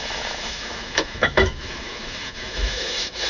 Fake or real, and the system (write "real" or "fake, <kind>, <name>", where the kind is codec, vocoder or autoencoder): fake, autoencoder, DAC-VAE